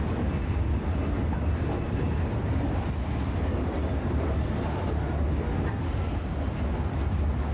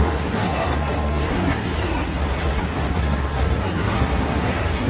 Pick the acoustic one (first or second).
first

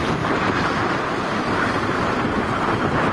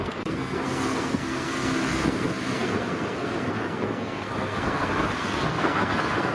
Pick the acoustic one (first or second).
first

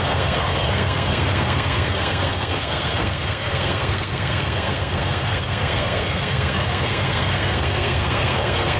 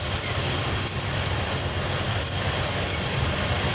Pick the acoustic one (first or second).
second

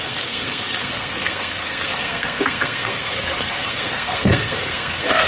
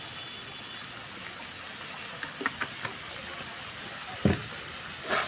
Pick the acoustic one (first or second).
second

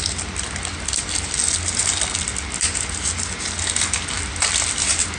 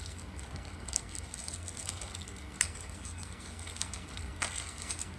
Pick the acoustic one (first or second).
first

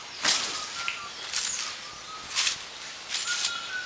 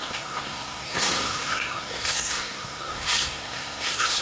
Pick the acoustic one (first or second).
first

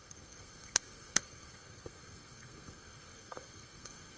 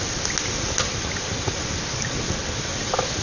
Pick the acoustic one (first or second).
second